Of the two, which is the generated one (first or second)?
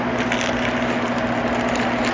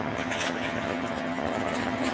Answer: second